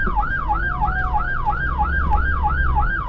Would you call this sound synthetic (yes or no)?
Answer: no